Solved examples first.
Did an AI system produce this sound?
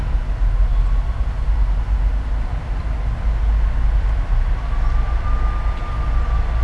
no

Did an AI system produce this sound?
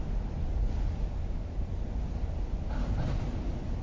no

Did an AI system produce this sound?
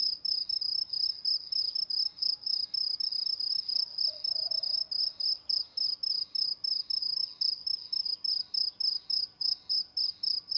no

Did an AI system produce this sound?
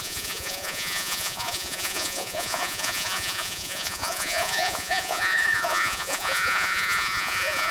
yes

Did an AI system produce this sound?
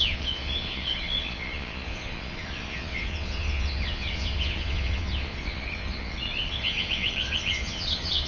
yes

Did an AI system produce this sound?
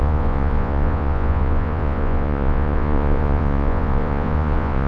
yes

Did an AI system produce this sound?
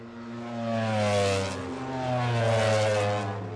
no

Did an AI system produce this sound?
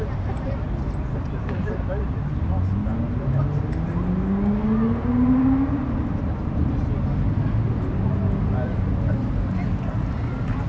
no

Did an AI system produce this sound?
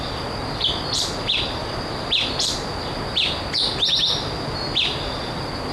no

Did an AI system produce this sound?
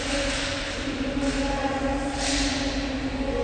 no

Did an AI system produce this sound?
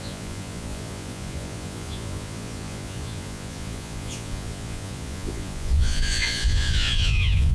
yes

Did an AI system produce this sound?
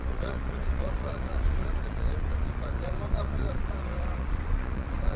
yes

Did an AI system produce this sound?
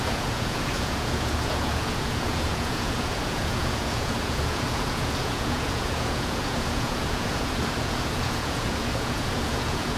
yes